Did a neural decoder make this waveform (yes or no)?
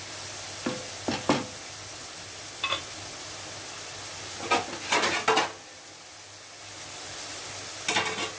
no